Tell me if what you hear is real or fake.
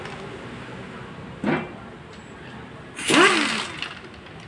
real